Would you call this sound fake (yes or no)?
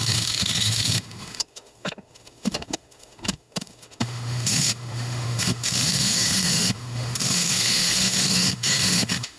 yes